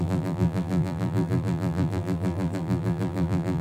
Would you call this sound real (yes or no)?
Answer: no